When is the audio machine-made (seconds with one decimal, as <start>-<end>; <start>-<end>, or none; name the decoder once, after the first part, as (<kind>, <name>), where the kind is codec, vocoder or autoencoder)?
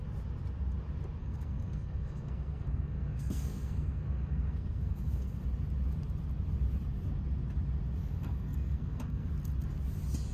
1.2-5.4 (codec, SNAC); 8.0-9.3